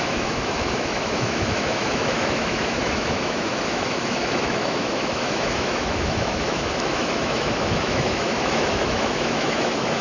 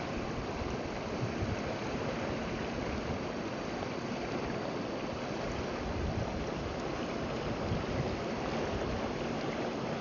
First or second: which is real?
second